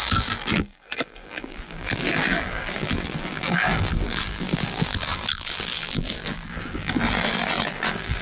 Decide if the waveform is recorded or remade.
remade